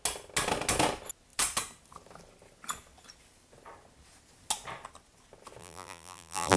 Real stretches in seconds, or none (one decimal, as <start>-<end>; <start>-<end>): 0.0-5.6